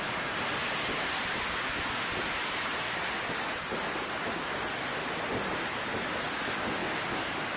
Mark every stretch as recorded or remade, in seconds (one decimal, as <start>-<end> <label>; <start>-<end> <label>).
0.0-7.6 recorded

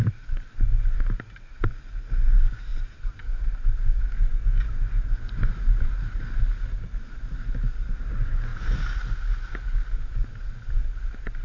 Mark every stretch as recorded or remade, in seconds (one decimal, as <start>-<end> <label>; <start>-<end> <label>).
0.0-11.4 recorded

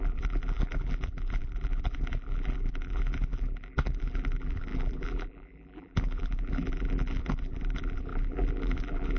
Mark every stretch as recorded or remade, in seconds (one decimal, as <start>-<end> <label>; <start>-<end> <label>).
0.0-9.2 remade

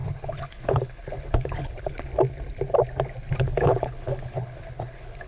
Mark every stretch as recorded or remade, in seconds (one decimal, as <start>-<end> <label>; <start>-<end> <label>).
0.0-2.1 remade; 2.1-3.4 recorded; 3.4-5.3 remade

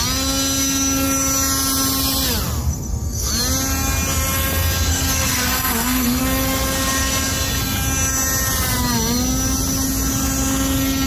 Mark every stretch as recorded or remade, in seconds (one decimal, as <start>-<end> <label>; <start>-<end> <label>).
0.0-2.6 recorded; 2.6-3.3 remade; 3.3-4.9 recorded; 4.9-6.2 remade; 6.2-11.1 recorded

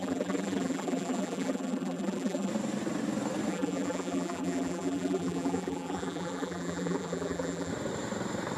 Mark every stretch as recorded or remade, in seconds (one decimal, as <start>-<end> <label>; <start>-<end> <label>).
0.0-2.5 remade; 2.5-3.5 recorded; 3.5-7.7 remade; 7.7-8.6 recorded